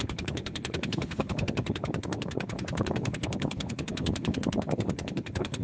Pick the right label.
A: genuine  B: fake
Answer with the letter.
B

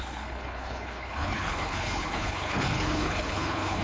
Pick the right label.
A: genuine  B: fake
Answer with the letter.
B